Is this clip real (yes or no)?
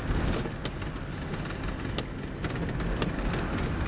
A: yes